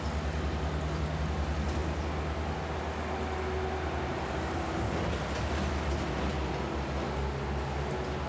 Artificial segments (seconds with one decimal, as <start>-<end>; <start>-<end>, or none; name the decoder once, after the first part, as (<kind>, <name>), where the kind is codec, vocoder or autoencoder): none